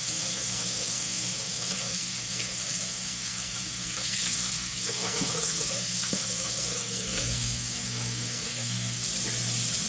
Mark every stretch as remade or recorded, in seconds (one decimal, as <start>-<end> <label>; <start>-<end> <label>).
0.0-9.1 remade; 9.1-9.9 recorded